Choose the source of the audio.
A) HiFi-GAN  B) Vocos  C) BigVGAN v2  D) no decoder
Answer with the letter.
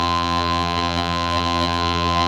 C